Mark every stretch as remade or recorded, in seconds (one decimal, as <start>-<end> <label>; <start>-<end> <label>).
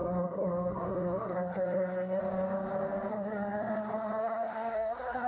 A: 0.0-2.2 remade; 2.2-3.1 recorded; 3.1-5.3 remade